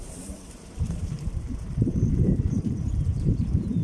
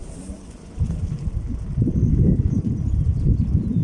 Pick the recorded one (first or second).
second